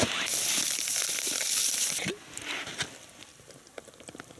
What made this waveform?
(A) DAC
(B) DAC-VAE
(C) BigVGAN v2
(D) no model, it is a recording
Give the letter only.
C